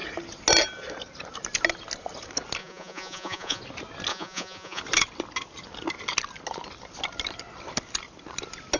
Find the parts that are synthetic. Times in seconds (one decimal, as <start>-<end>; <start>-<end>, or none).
2.6-3.6; 4.1-4.8